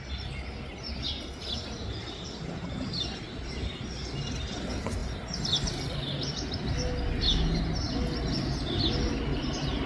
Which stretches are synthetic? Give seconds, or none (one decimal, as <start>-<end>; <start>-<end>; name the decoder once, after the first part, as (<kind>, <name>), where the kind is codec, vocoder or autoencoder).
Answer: none